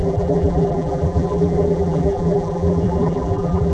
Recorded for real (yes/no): no